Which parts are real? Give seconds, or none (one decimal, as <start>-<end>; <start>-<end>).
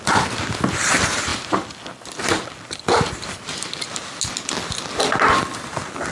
0.0-6.1